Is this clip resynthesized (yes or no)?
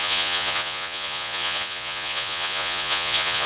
yes